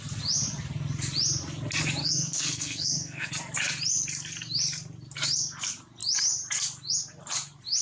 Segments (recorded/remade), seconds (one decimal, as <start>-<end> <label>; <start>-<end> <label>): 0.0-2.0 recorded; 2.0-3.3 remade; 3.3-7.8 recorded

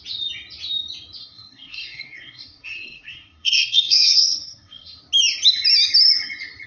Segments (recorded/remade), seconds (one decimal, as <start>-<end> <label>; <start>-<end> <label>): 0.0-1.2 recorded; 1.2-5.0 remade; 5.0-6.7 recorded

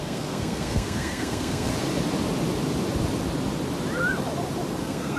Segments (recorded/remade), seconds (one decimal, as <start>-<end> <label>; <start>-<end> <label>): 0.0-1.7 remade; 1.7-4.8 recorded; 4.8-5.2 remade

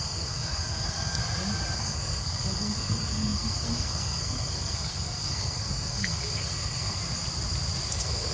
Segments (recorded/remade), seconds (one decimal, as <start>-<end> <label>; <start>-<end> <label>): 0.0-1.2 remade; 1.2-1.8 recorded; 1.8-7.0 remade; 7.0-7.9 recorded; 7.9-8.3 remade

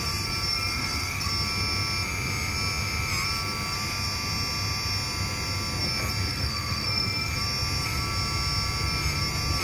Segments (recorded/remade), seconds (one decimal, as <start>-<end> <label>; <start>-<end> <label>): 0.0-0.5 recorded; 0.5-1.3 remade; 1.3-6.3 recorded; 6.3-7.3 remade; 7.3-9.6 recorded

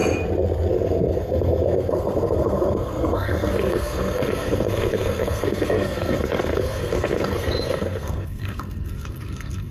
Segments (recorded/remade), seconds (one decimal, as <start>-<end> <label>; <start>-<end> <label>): 0.0-0.7 recorded; 0.7-9.7 remade

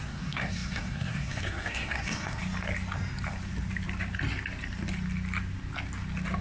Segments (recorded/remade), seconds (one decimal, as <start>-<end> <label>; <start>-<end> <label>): 0.0-2.4 remade; 2.4-6.4 recorded